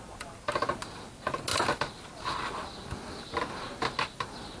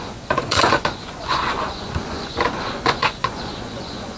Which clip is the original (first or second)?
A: first